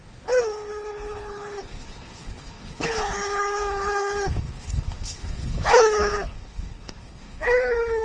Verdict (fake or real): fake